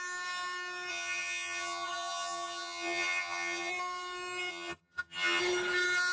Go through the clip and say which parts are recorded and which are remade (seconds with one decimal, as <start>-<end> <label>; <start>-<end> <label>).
0.0-0.9 recorded; 0.9-3.7 remade; 3.7-4.5 recorded; 4.5-5.4 remade; 5.4-6.1 recorded